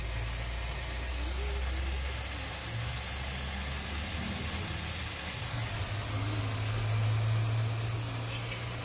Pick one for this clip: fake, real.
real